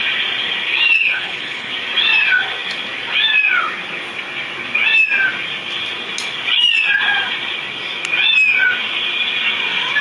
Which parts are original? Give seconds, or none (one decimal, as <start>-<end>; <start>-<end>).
0.0-1.0; 1.7-10.0